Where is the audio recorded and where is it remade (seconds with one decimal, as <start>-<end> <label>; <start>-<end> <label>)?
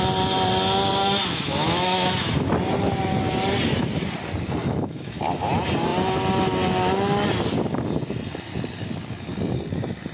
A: 0.0-1.0 recorded; 1.0-2.5 remade; 2.5-4.6 recorded; 4.6-5.2 remade; 5.2-10.1 recorded